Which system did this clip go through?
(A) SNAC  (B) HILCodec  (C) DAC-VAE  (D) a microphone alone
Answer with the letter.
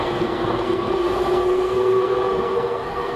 A